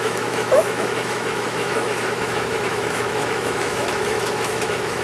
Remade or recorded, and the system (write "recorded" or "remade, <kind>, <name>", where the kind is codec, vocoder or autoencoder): remade, autoencoder, DAC-VAE